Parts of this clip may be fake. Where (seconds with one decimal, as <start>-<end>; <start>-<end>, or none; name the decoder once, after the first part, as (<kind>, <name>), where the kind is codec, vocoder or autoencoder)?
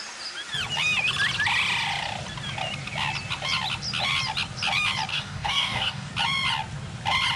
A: 5.1-6.1 (codec, DAC)